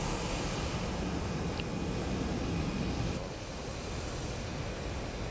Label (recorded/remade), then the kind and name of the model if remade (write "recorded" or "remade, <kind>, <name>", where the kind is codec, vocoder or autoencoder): recorded